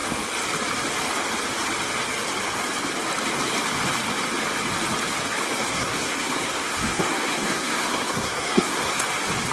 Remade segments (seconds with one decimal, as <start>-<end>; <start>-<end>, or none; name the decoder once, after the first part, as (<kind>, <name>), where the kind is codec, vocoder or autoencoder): 5.7-9.0 (codec, SNAC)